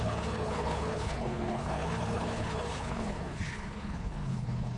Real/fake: fake